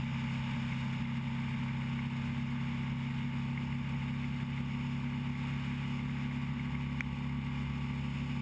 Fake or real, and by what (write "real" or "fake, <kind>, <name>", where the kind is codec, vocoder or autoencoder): real